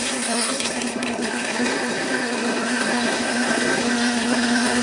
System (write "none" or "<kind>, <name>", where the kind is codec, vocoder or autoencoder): codec, SNAC